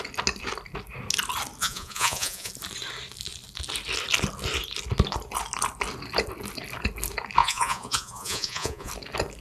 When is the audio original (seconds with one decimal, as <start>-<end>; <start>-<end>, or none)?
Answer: 0.0-1.6; 2.5-7.4; 8.9-9.4